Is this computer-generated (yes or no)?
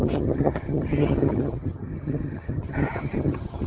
yes